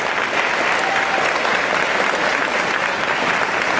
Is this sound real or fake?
real